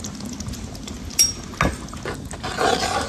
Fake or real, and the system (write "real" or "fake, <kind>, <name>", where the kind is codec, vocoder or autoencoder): real